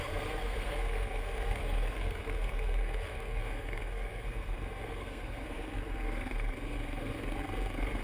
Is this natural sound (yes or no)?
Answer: no